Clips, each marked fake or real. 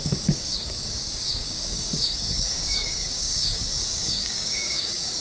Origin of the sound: fake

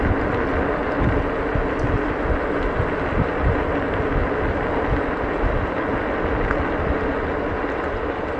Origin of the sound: real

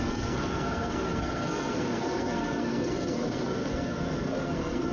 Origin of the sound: fake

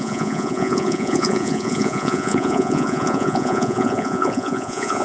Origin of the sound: fake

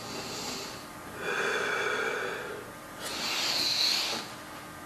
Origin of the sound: real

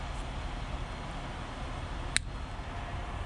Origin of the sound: real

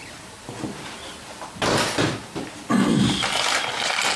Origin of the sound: real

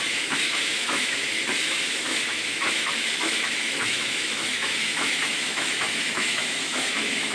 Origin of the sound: fake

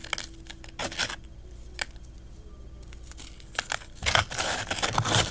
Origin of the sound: real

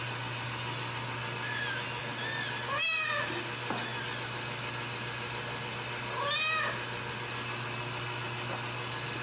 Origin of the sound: real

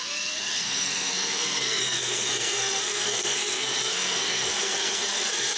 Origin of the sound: fake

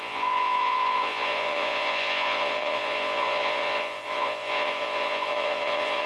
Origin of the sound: fake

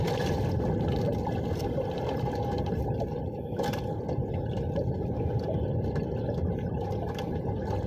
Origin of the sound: fake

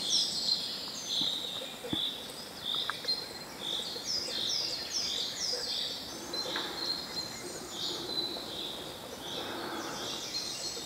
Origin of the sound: real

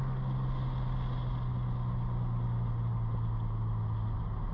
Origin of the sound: real